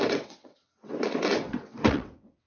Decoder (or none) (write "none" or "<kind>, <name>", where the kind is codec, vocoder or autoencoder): vocoder, WaveNeXt